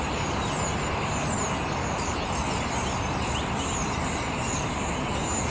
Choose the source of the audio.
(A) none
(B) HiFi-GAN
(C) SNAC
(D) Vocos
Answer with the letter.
A